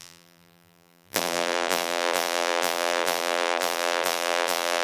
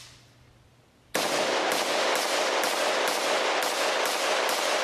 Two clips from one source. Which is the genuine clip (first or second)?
second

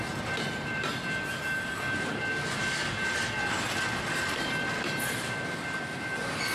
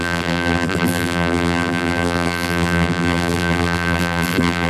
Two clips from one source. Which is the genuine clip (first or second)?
first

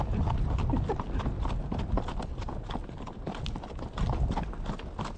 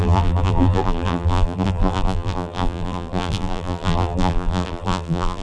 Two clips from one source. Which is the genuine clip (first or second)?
first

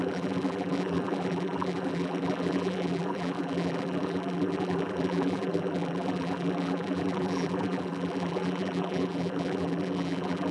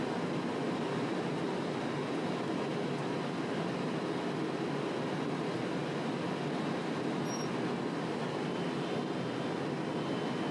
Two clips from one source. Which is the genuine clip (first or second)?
second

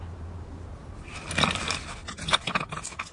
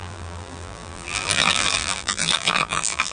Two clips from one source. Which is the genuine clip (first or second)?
first